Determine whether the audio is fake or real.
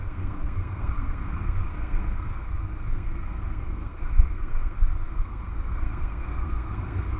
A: fake